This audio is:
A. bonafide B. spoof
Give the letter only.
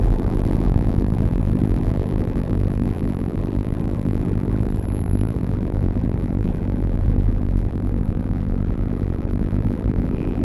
B